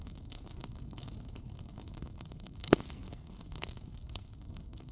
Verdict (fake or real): fake